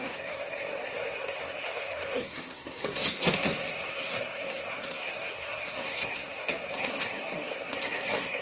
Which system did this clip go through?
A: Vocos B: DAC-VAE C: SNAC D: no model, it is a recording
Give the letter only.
C